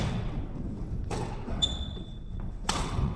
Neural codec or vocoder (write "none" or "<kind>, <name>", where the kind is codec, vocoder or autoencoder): vocoder, WaveNeXt